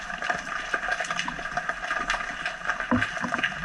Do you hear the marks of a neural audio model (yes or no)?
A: no